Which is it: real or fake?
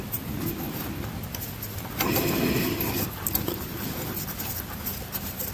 real